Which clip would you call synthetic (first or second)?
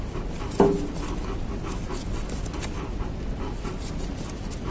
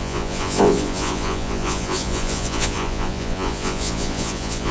second